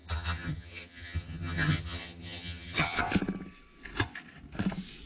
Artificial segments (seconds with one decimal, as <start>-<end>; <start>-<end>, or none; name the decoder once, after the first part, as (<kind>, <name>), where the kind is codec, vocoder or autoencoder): 0.0-3.0 (vocoder, HiFi-GAN)